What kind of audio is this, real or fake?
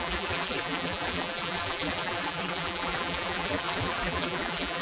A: fake